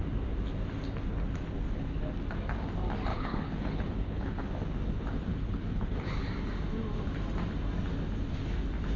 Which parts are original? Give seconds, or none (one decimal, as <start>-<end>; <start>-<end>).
0.0-3.1; 4.5-5.3; 6.3-9.0